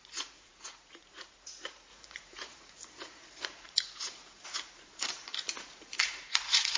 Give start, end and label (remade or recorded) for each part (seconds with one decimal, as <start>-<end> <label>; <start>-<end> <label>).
0.0-6.8 remade